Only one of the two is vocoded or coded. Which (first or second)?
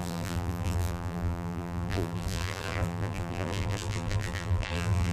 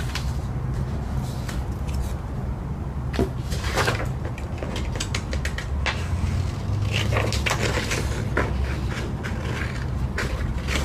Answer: first